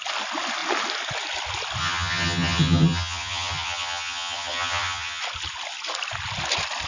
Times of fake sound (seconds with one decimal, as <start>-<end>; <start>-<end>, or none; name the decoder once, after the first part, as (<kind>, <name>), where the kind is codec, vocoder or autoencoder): 1.8-5.2 (vocoder, HiFi-GAN)